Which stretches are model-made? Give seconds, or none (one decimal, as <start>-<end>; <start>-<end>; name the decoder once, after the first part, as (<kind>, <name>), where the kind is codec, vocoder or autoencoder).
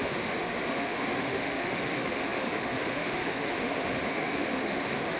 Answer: 0.0-5.2 (autoencoder, DAC-VAE)